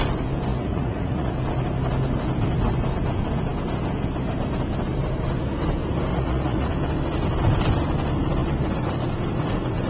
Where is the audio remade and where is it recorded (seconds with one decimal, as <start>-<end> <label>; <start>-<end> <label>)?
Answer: 0.0-0.5 recorded; 0.5-1.3 remade; 1.3-6.1 recorded; 6.1-6.7 remade; 6.7-9.9 recorded